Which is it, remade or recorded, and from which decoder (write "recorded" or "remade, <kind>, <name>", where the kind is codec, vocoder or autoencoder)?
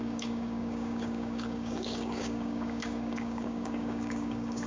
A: remade, codec, DAC